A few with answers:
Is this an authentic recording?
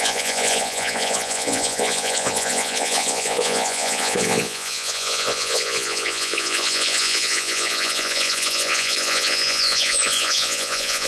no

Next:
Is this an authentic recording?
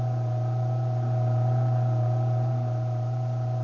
yes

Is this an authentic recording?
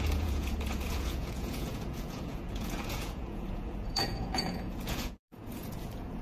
no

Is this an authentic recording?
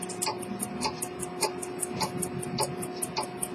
yes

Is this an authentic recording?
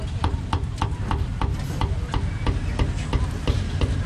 yes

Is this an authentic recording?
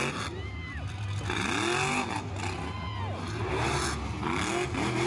yes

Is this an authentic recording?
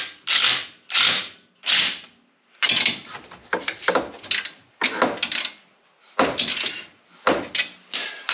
yes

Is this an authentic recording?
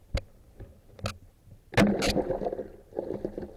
yes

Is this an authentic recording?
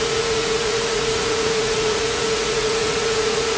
no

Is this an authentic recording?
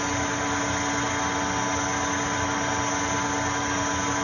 yes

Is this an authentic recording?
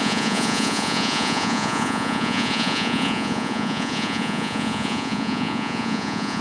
no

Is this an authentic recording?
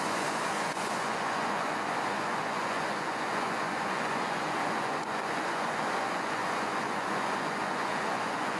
no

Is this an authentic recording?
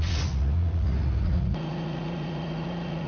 no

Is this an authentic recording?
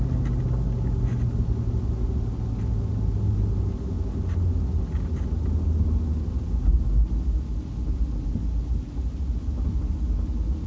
yes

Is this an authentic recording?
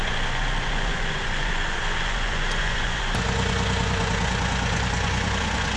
no